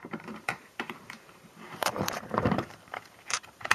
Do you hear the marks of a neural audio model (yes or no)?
yes